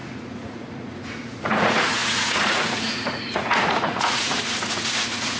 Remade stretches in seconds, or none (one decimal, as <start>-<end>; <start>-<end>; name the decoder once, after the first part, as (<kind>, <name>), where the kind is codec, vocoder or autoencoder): 0.0-5.4 (vocoder, Vocos)